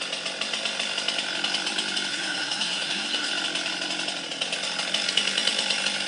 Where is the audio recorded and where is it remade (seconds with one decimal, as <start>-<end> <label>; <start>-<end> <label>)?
0.0-2.1 recorded; 2.1-3.3 remade; 3.3-6.1 recorded